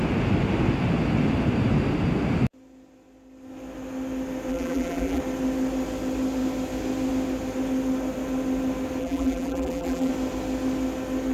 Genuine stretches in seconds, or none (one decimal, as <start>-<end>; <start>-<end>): 0.0-4.5; 5.2-9.0; 10.1-11.3